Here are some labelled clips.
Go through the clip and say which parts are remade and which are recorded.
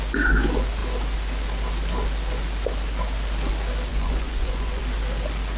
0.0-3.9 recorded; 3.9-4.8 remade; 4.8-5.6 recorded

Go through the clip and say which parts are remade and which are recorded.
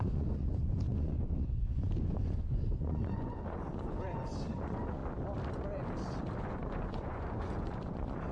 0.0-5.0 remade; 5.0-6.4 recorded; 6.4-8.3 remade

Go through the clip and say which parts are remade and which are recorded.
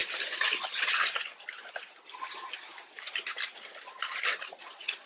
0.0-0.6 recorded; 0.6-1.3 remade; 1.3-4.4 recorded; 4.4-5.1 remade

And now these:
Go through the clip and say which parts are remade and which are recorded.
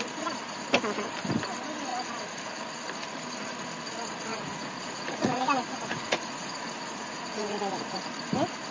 0.0-4.3 recorded; 4.3-8.0 remade; 8.0-8.7 recorded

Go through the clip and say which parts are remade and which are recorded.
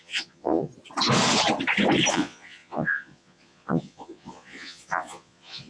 0.0-0.7 remade; 0.7-2.1 recorded; 2.1-5.7 remade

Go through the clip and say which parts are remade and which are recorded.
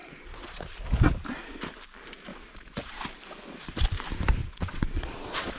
0.0-0.6 remade; 0.6-2.3 recorded; 2.3-3.0 remade; 3.0-4.4 recorded; 4.4-5.6 remade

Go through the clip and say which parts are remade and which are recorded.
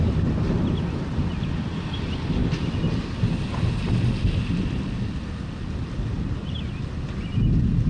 0.0-7.9 recorded